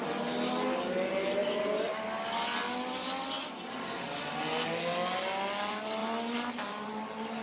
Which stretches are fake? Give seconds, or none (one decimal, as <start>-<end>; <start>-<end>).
none